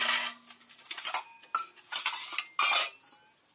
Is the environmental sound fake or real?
real